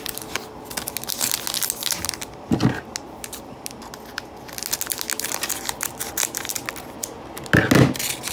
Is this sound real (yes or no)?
yes